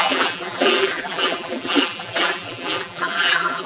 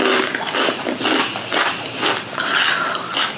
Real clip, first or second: second